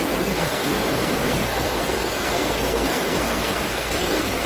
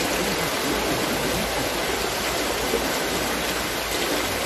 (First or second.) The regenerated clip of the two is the first